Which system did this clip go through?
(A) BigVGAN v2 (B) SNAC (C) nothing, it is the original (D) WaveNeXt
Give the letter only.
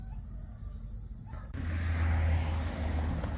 C